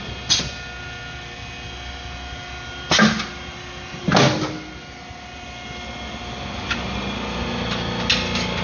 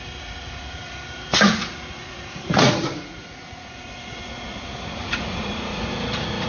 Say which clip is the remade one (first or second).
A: second